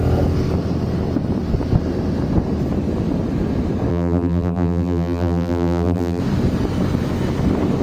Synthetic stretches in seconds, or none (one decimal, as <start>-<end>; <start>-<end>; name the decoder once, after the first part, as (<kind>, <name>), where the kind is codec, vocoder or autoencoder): 3.9-6.2 (vocoder, BigVGAN v2)